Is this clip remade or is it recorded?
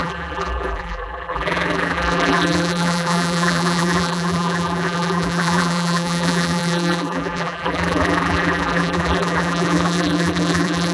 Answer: remade